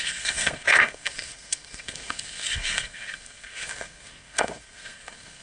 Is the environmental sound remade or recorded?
remade